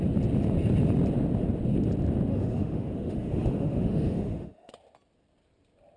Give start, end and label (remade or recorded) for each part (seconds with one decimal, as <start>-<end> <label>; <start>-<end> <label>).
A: 0.0-2.3 recorded; 2.3-4.7 remade; 4.7-6.0 recorded